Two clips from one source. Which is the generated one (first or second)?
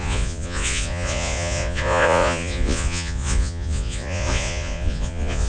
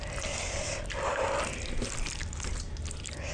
first